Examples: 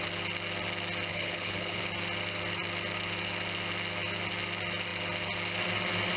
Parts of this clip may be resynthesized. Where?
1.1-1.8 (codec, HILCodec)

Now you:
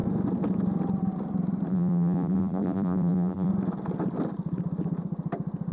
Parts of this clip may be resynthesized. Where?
1.7-3.5 (vocoder, BigVGAN v2)

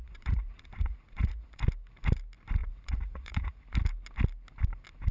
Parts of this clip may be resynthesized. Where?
0.0-1.6 (vocoder, Vocos); 2.6-3.6

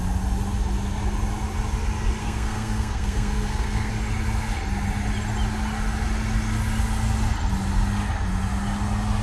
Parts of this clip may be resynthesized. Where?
2.2-3.9 (codec, SNAC)

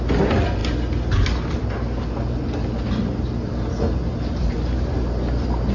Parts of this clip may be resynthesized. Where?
none

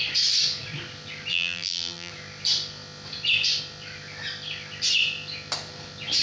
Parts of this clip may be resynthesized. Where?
1.3-2.1 (vocoder, BigVGAN v2)